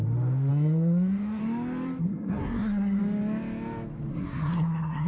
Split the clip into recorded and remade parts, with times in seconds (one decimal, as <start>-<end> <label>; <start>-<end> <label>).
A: 0.0-0.5 recorded; 0.5-1.4 remade; 1.4-2.0 recorded; 2.0-3.0 remade; 3.0-4.1 recorded; 4.1-5.1 remade